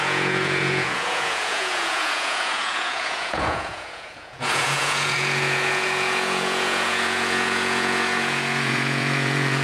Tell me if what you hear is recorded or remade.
remade